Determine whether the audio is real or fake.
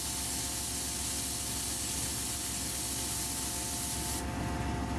real